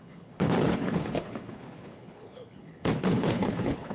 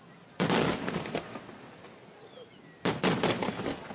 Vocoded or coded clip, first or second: first